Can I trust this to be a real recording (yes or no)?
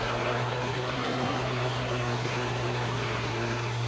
no